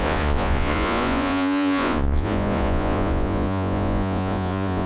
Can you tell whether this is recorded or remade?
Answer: remade